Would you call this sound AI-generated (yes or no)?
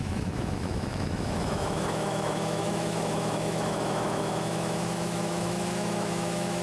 yes